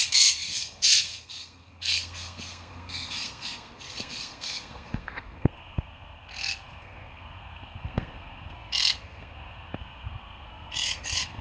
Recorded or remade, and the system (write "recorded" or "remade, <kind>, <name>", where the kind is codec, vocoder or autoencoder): remade, codec, SNAC